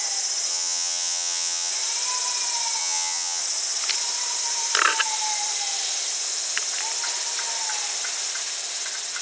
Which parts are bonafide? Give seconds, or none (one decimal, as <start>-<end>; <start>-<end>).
0.0-0.5; 1.7-2.8; 3.4-9.2